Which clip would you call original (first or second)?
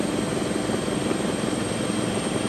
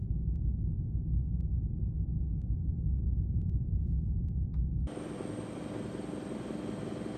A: second